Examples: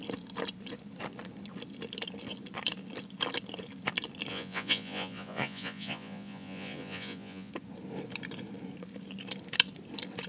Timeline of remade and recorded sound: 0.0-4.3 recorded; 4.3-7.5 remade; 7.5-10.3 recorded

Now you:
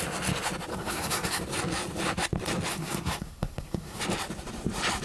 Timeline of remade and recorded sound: 0.0-0.7 recorded; 0.7-1.4 remade; 1.4-2.7 recorded; 2.7-4.0 remade; 4.0-5.0 recorded

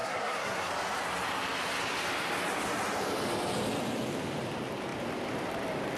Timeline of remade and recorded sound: 0.0-0.7 remade; 0.7-6.0 recorded

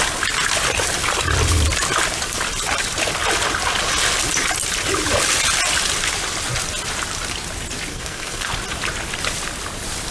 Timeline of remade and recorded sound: 0.0-7.9 recorded; 7.9-8.5 remade; 8.5-10.1 recorded

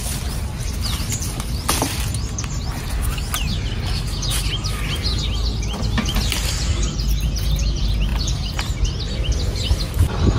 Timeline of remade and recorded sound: 0.0-10.4 recorded

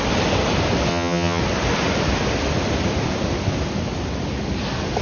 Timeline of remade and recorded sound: 0.0-0.9 recorded; 0.9-1.4 remade; 1.4-5.0 recorded

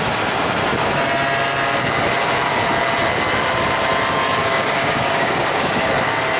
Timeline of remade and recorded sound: 0.0-4.4 recorded; 4.4-5.9 remade; 5.9-6.4 recorded